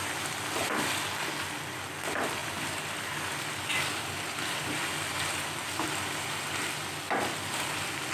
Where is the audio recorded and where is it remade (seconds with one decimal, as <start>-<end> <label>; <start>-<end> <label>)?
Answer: 0.0-8.1 recorded